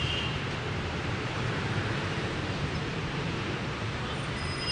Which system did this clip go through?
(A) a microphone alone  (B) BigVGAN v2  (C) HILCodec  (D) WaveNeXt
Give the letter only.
B